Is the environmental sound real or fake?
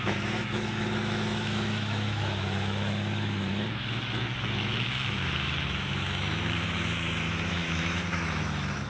fake